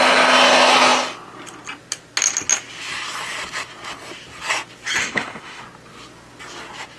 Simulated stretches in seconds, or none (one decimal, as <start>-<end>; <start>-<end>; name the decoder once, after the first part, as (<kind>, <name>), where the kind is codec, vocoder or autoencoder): 5.0-5.6 (autoencoder, DAC-VAE)